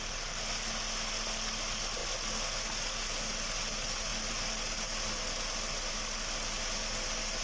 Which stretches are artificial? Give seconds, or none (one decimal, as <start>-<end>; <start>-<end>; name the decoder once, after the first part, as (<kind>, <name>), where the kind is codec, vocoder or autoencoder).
none